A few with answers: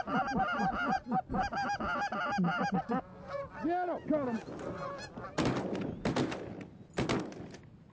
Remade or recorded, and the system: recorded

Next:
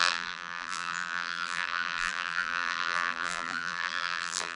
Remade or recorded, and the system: remade, vocoder, BigVGAN v2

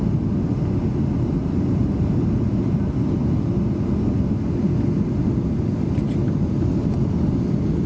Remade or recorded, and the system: recorded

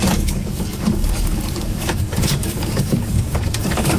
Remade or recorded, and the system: remade, codec, DAC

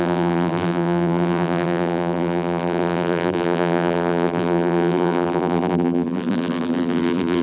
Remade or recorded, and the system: remade, vocoder, BigVGAN v2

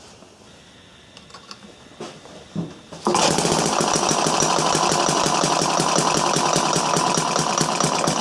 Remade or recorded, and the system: recorded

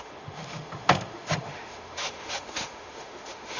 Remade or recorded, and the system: remade, autoencoder, DAC-VAE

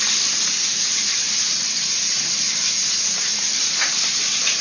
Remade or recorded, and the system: remade, vocoder, BigVGAN v2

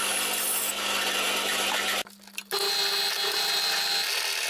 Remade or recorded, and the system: recorded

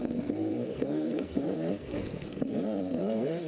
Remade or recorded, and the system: remade, codec, SNAC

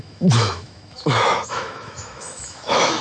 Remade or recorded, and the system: remade, autoencoder, DAC-VAE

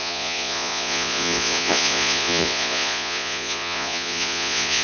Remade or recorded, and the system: remade, vocoder, Vocos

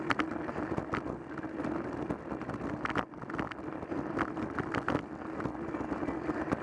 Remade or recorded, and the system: recorded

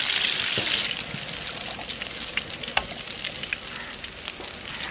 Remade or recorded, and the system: recorded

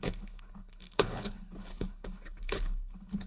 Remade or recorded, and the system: remade, codec, HILCodec